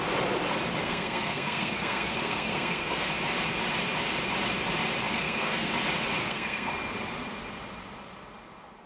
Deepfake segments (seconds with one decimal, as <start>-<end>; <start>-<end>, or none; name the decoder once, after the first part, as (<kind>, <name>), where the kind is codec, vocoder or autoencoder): 0.8-3.1 (codec, SNAC); 5.1-5.7; 6.2-6.7

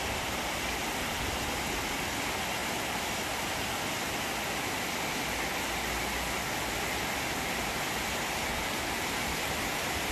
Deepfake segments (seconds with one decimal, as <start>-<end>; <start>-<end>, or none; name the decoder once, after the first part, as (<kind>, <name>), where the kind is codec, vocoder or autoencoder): none

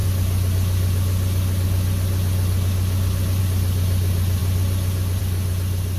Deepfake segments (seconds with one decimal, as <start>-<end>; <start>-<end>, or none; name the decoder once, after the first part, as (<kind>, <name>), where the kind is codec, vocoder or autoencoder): none